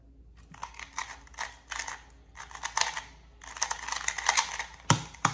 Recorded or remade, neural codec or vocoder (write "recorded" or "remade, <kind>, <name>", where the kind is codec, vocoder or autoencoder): recorded